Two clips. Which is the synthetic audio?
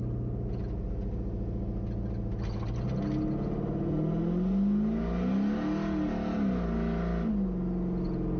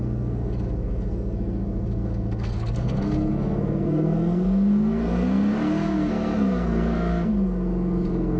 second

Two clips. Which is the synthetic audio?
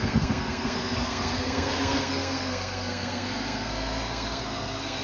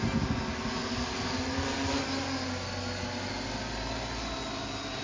first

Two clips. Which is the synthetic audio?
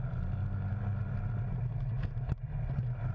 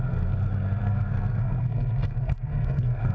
second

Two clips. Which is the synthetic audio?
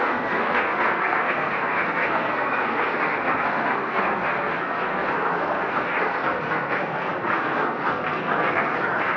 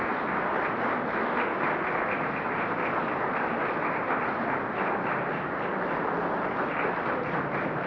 first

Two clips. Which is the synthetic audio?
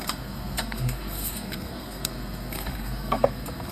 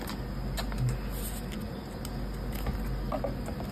first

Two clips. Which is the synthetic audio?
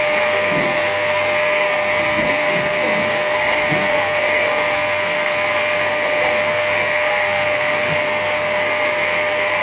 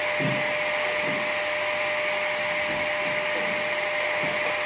first